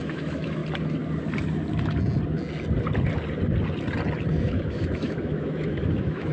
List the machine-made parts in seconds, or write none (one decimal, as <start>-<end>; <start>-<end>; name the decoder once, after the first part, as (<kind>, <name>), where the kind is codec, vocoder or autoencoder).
0.0-0.6 (autoencoder, DAC-VAE); 4.3-6.3

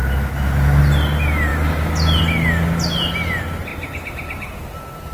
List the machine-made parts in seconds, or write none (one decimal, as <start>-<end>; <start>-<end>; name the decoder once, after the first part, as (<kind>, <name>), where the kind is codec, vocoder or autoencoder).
0.0-0.8 (autoencoder, DAC-VAE)

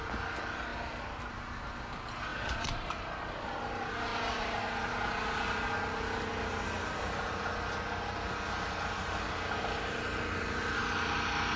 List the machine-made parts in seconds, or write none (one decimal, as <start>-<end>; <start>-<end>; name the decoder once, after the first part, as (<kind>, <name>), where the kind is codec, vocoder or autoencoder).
none

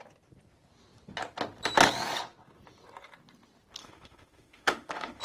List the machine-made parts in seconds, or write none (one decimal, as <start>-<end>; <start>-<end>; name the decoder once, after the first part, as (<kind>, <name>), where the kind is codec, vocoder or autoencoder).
3.8-5.2 (autoencoder, DAC-VAE)